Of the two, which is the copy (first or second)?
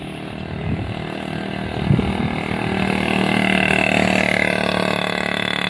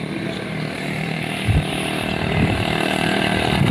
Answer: second